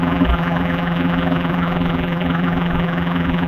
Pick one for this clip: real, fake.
fake